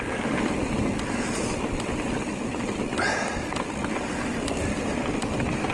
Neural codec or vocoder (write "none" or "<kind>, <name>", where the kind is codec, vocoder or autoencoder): none